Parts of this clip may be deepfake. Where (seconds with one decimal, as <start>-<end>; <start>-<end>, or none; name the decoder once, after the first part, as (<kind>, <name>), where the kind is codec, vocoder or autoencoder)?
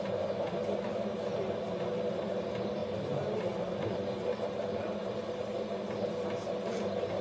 none